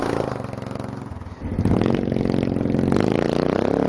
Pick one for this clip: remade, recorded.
recorded